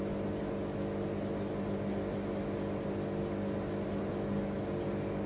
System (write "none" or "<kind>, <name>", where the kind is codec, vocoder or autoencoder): none